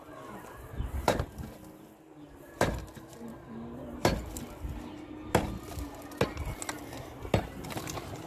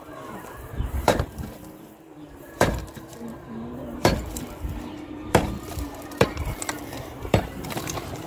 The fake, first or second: second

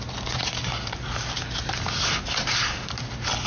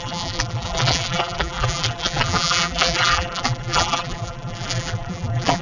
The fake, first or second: second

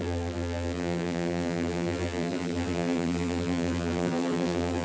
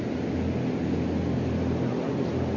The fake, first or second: first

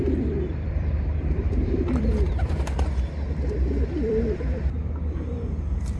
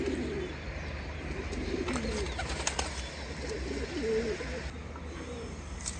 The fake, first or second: first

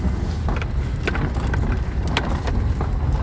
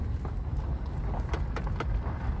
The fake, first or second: second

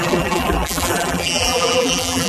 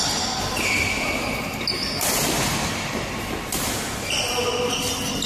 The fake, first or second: first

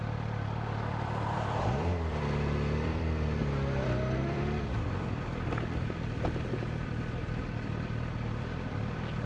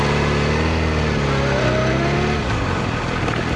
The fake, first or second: first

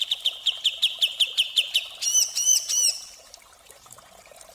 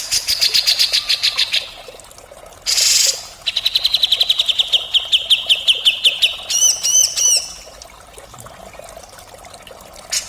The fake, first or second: first